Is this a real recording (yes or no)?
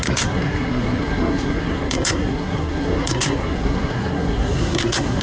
no